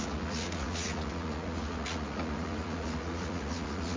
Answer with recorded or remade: remade